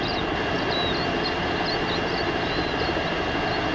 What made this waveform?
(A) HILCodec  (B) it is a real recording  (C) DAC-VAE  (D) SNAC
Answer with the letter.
B